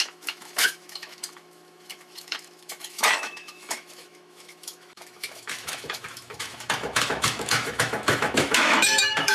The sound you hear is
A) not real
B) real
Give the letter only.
A